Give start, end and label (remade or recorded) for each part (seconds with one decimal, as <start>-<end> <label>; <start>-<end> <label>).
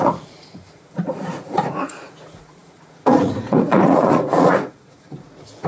0.0-5.7 remade